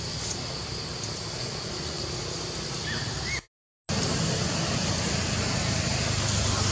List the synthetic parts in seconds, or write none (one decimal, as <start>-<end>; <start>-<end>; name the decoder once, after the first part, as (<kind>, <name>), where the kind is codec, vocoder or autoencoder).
1.4-2.0 (vocoder, Vocos)